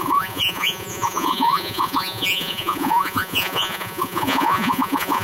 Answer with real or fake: fake